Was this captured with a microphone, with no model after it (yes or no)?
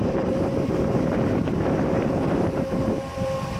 no